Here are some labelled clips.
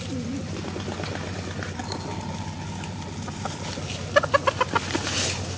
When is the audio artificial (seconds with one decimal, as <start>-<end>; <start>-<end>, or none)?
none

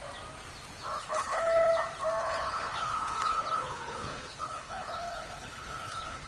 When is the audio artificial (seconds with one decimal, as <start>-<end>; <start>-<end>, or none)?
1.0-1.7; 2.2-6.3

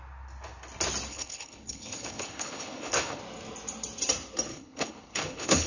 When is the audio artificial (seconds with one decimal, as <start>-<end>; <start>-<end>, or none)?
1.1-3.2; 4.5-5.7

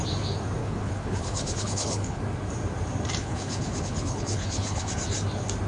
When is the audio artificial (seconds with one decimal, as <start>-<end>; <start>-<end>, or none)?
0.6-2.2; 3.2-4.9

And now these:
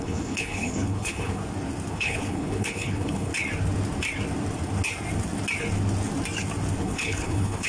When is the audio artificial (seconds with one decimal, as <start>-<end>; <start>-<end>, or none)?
0.0-1.4; 1.9-3.3; 6.8-7.7

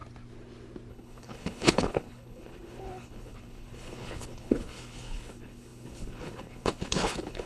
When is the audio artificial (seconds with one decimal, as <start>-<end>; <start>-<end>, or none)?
0.9-7.5